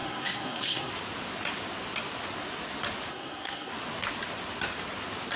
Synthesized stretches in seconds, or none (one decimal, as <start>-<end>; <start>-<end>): 0.0-0.9; 3.1-3.7